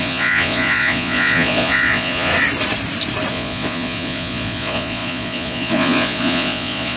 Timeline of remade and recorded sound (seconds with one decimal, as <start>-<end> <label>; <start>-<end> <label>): 0.0-2.3 remade; 2.3-3.3 recorded; 3.3-7.0 remade